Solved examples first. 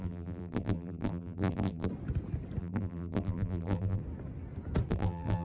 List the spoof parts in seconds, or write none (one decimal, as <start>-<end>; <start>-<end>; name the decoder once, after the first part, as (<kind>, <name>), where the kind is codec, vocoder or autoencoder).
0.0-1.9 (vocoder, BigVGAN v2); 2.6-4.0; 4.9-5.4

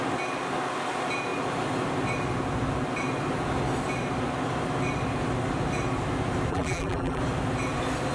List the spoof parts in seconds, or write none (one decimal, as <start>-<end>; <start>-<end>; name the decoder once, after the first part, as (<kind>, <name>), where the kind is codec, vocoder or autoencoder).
6.5-7.2 (vocoder, BigVGAN v2)

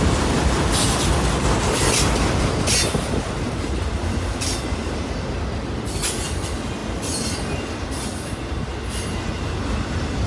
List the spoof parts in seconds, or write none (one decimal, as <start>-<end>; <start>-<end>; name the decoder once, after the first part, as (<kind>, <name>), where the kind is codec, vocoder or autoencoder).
none

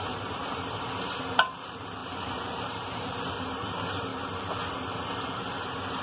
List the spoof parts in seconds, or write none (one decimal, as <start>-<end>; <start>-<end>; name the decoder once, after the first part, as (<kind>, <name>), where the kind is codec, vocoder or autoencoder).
0.0-4.1 (vocoder, BigVGAN v2); 4.7-6.0

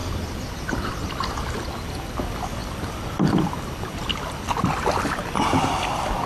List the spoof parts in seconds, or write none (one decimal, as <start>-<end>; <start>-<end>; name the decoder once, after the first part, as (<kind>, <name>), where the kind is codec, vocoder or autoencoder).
none

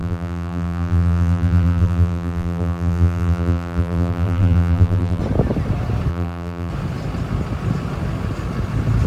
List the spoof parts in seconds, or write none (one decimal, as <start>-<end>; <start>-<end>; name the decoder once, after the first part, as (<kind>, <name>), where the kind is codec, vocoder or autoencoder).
0.0-5.2 (vocoder, BigVGAN v2); 6.1-6.7

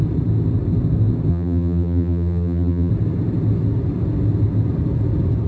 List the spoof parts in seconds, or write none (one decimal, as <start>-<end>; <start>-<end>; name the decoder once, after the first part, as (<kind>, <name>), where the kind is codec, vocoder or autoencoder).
1.3-2.9 (vocoder, BigVGAN v2)